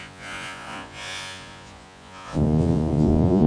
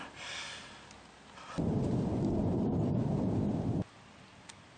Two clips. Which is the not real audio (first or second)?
first